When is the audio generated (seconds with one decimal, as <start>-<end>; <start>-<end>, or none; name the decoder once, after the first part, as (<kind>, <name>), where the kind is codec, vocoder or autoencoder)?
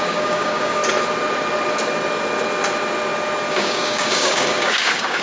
0.0-0.8 (codec, DAC); 3.5-5.2